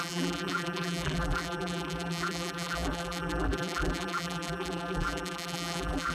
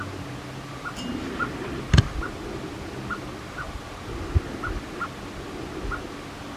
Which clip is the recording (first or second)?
second